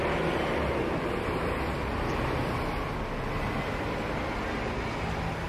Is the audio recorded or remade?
recorded